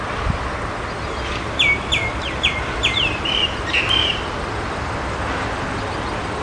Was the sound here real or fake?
real